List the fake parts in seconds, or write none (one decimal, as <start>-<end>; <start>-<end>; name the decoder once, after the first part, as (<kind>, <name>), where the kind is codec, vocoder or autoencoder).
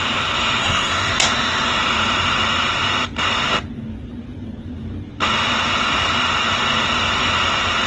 0.6-1.1 (codec, SNAC)